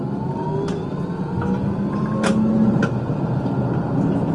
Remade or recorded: recorded